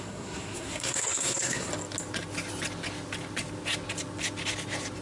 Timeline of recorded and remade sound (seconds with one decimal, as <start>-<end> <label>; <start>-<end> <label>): 0.0-1.7 remade; 1.7-5.0 recorded